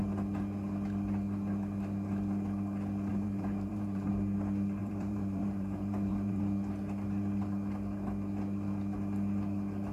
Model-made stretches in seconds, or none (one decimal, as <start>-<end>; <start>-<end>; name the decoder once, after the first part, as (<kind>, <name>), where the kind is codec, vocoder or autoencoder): 3.1-4.1 (vocoder, BigVGAN v2); 4.8-6.4